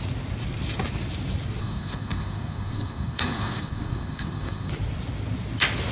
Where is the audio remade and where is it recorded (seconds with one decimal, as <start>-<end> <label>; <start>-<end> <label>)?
0.0-1.6 recorded; 1.6-4.7 remade; 4.7-5.9 recorded